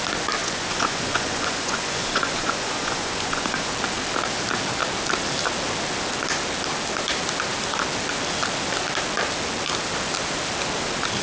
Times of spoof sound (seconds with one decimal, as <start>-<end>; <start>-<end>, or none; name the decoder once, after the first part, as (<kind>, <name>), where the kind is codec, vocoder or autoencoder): 0.4-3.7 (vocoder, Vocos)